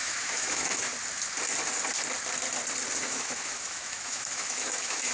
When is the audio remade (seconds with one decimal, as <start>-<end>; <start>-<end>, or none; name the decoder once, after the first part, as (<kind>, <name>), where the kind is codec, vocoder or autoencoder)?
0.0-0.9 (autoencoder, DAC-VAE); 3.0-5.1